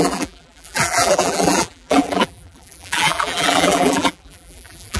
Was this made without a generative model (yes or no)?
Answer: no